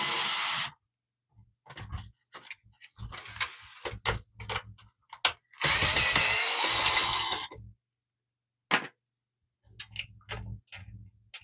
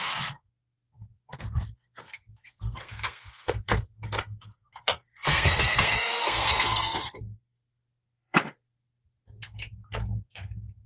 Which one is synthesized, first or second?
second